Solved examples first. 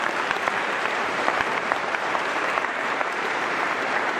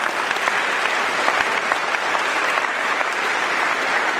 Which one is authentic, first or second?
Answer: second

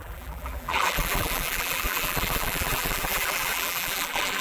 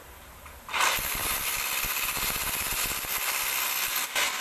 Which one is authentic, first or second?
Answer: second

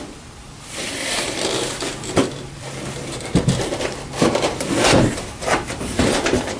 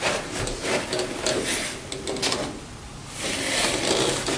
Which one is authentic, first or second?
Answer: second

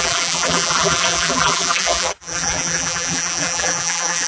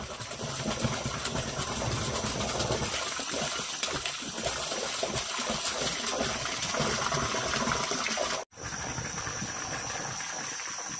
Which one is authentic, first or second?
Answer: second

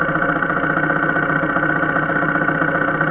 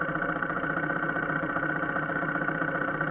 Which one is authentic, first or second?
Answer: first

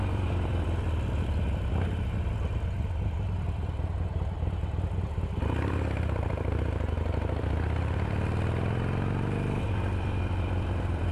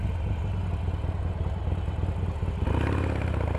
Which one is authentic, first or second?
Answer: second